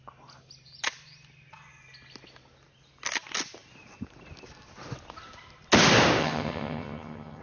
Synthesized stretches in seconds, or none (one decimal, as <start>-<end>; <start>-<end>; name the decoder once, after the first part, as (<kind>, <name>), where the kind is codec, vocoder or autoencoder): 6.2-7.4 (vocoder, HiFi-GAN)